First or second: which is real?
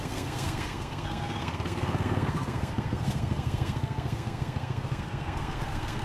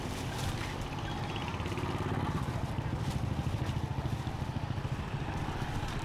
second